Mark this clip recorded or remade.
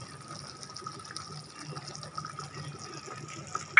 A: recorded